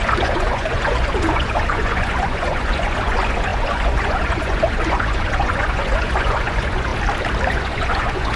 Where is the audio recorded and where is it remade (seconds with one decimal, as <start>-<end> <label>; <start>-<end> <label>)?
0.0-6.9 remade; 6.9-7.5 recorded; 7.5-8.4 remade